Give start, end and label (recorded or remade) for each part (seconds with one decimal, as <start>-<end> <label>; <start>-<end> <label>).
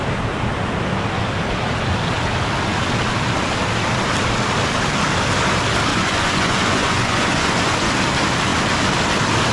0.0-5.9 recorded; 5.9-7.9 remade; 7.9-9.5 recorded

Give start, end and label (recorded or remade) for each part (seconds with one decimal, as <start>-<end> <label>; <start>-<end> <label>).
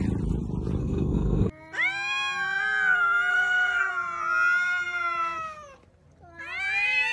0.0-0.8 recorded; 0.8-1.5 remade; 1.5-3.3 recorded; 3.3-3.9 remade; 3.9-7.1 recorded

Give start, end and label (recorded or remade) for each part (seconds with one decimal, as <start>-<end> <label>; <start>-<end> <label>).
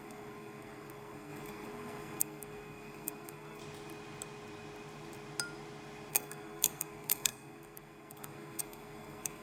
0.0-3.6 remade; 3.6-6.1 recorded; 6.1-9.4 remade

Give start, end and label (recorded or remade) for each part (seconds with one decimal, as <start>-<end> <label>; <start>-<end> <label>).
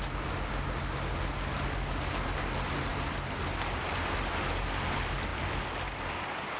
0.0-5.3 recorded; 5.3-6.1 remade; 6.1-6.6 recorded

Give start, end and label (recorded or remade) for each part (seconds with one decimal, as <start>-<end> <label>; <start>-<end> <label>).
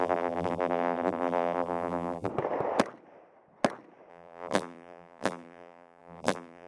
0.0-2.3 remade; 2.3-4.1 recorded; 4.1-6.7 remade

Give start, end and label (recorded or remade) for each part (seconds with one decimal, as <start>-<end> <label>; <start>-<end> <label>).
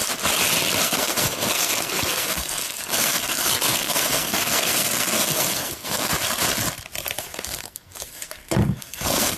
0.0-0.8 recorded; 0.8-6.1 remade; 6.1-7.2 recorded; 7.2-9.4 remade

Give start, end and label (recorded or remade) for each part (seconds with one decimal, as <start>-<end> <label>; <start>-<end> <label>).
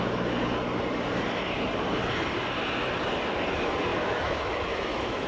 0.0-3.9 recorded; 3.9-5.3 remade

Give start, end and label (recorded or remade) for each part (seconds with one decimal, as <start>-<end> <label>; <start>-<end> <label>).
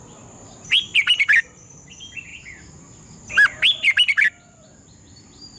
0.0-5.6 recorded